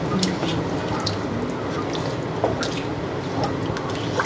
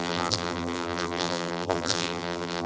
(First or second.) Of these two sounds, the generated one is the second